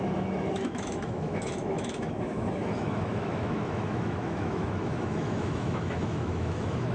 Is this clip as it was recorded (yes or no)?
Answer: no